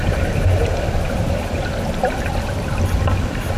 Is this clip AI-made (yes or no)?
no